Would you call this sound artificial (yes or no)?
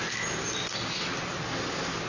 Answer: no